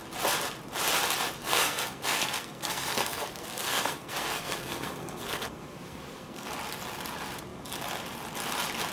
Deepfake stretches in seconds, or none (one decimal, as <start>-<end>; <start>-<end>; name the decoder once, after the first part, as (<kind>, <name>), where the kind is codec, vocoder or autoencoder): 1.4-6.5 (codec, SNAC)